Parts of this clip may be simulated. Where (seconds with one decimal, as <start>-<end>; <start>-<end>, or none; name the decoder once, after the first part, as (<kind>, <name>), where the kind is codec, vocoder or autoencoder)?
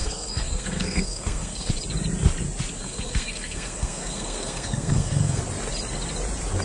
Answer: 0.0-1.7 (codec, SNAC); 2.8-5.4